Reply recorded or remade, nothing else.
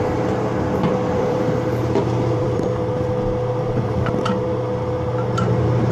remade